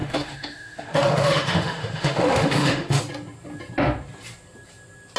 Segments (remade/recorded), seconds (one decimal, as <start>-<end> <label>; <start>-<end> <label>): 0.0-3.0 remade; 3.0-5.2 recorded